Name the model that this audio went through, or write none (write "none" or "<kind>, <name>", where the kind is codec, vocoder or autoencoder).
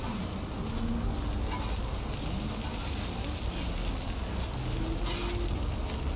none